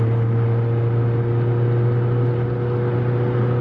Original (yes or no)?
yes